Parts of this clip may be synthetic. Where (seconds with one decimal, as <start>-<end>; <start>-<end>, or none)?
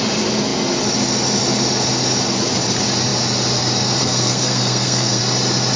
4.0-5.2